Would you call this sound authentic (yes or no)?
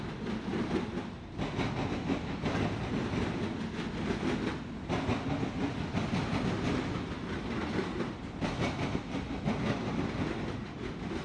yes